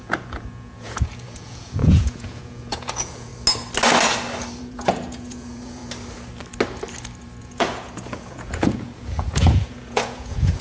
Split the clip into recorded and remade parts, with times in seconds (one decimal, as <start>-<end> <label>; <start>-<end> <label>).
0.0-3.3 remade; 3.3-4.6 recorded; 4.6-5.8 remade; 5.8-7.4 recorded; 7.4-10.6 remade